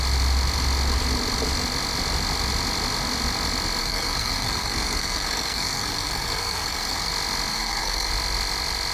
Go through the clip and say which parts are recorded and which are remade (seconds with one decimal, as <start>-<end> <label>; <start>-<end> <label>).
0.0-3.8 recorded; 3.8-7.1 remade; 7.1-7.5 recorded; 7.5-8.1 remade; 8.1-8.9 recorded